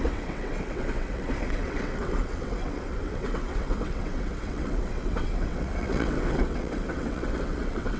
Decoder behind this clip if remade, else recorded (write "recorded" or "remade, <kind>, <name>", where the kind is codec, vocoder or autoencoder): remade, vocoder, WaveNeXt